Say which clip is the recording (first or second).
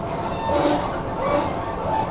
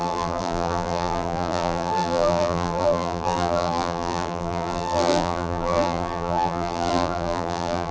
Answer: first